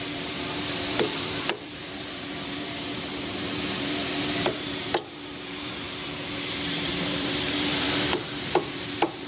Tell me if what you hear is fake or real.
fake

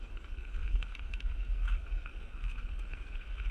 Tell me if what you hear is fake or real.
fake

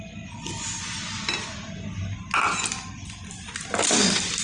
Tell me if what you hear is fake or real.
real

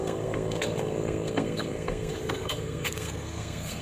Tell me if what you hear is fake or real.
fake